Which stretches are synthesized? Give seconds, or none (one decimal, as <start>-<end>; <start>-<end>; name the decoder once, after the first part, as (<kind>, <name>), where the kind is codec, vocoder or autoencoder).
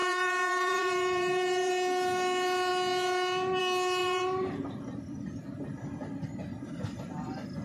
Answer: 0.0-1.7 (vocoder, BigVGAN v2); 4.0-7.6